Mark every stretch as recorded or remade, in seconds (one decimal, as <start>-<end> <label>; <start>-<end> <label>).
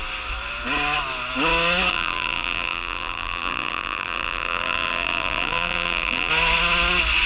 0.0-1.9 recorded; 1.9-6.3 remade; 6.3-7.3 recorded